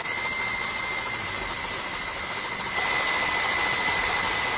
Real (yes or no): yes